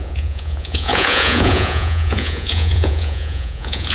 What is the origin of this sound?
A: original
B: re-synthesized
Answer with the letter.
B